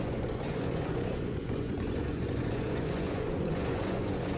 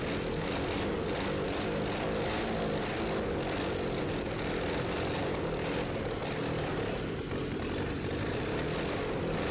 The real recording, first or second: second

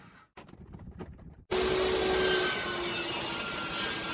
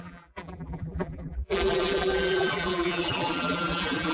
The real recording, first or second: first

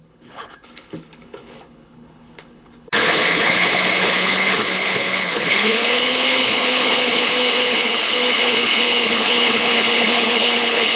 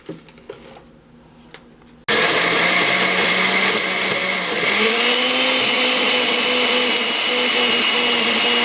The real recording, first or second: second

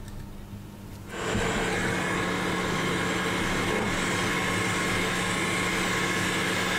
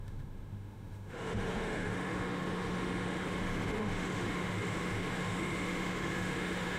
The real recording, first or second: first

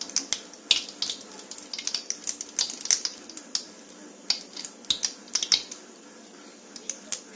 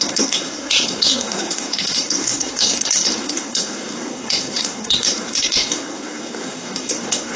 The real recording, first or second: first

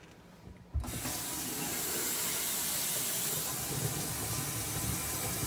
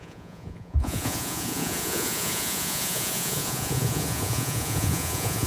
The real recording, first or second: first